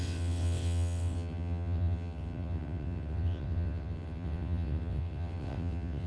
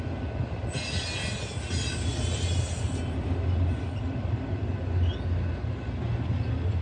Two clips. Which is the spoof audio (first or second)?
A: first